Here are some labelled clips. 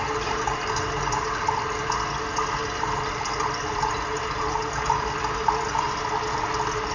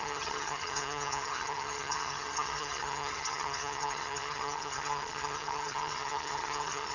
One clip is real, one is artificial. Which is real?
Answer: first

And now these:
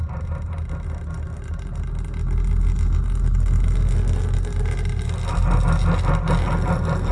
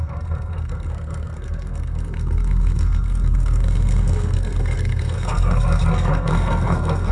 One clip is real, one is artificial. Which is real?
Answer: first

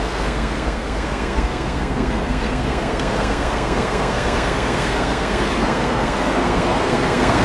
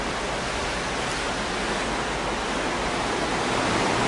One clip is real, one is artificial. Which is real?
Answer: second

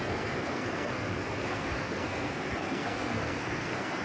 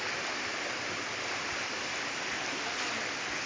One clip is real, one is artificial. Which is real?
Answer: second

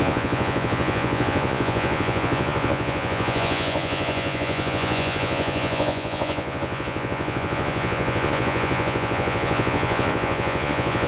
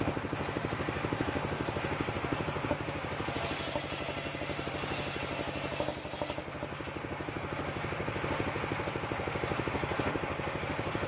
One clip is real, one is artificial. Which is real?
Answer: second